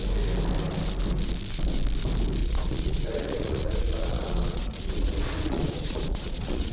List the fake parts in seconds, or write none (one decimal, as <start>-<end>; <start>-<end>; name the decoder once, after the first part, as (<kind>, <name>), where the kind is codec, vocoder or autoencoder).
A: 2.4-6.7 (vocoder, Vocos)